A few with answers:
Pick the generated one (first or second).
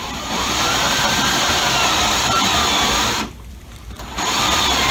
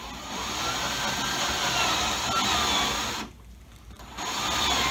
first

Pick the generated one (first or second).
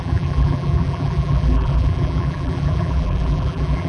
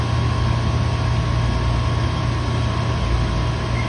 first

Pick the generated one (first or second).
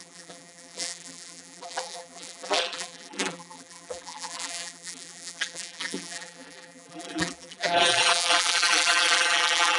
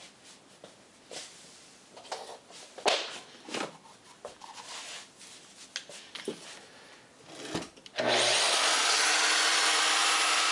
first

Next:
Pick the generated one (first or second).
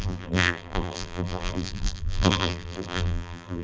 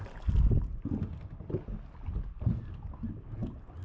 first